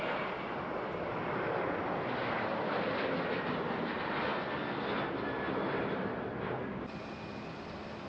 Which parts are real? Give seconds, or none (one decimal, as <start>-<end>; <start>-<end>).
0.0-8.1